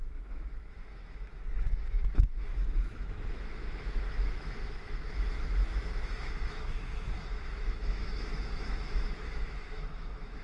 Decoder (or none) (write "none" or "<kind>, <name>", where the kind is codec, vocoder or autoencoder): autoencoder, DAC-VAE